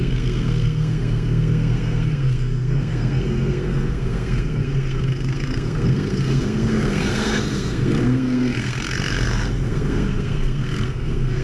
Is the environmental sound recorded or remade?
remade